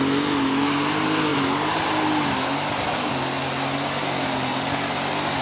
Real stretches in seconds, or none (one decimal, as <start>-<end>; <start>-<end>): 0.0-5.4